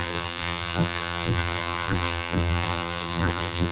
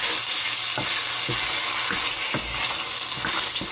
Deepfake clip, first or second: first